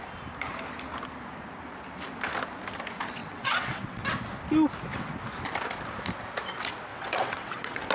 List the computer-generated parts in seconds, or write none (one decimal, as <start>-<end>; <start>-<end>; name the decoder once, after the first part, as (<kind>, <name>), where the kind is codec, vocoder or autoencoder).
3.2-4.0 (vocoder, WaveNeXt); 6.9-7.9